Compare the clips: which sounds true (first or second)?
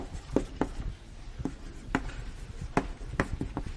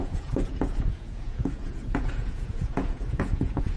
first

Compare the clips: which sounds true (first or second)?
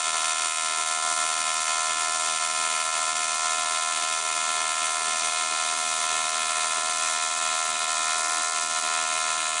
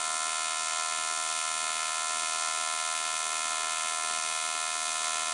second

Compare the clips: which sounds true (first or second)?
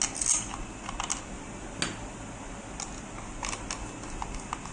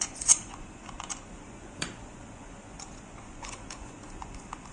first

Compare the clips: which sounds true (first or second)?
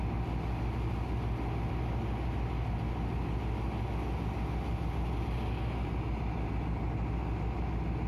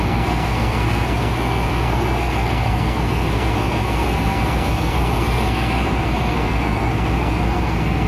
first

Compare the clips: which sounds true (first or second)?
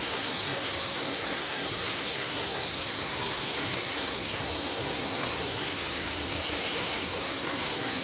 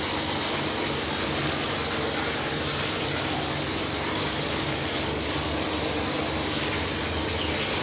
second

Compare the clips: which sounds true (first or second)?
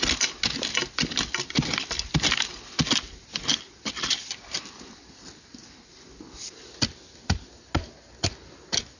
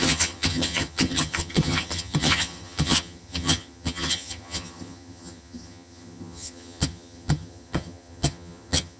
first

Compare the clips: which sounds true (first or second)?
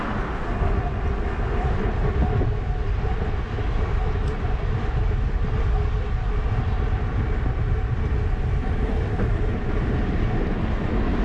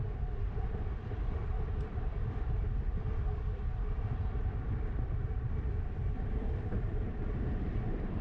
first